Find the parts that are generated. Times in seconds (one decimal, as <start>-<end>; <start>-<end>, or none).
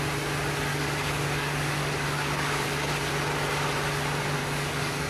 0.7-2.9; 4.4-5.1